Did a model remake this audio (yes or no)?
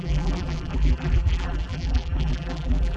yes